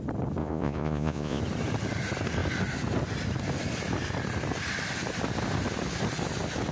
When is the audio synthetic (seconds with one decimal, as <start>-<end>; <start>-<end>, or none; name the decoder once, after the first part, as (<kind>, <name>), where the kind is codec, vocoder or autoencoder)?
0.4-1.4 (vocoder, Vocos)